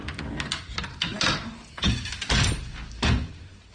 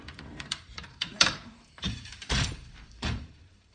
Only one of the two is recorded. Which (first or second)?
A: first